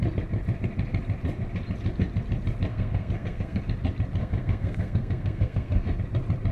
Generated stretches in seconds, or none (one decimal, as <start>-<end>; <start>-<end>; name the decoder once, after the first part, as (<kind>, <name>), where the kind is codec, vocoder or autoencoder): 2.7-3.6 (codec, SNAC); 4.2-6.0